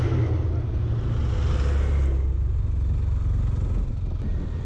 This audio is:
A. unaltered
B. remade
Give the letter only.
A